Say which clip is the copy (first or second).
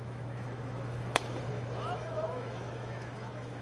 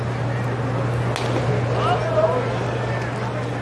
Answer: first